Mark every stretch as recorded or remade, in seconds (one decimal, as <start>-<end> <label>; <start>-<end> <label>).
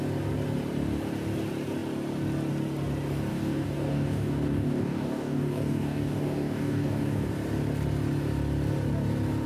0.0-3.3 recorded; 3.3-7.3 remade; 7.3-9.5 recorded